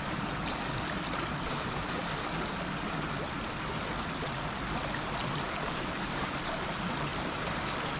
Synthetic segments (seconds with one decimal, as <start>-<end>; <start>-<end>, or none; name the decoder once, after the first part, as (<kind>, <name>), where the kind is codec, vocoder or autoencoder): 1.3-2.0 (vocoder, BigVGAN v2); 5.2-6.6; 7.1-7.6